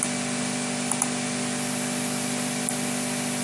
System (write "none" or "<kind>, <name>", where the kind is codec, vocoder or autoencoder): none